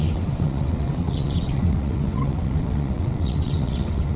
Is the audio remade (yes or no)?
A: yes